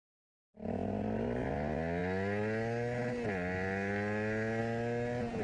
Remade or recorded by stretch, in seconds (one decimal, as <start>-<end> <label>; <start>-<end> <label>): 0.0-5.4 recorded